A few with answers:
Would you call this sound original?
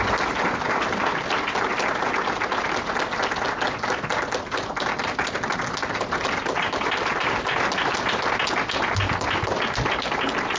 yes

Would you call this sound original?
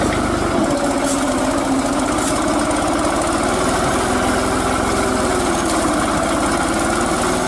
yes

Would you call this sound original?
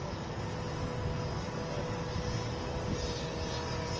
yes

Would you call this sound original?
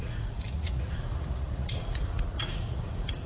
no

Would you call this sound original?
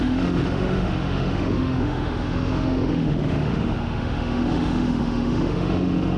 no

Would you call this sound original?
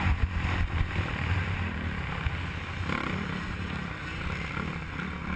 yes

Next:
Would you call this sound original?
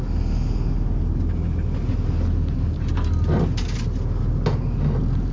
yes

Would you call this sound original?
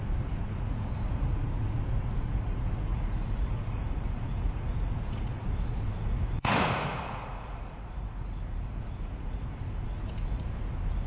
no